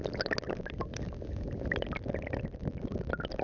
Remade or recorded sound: recorded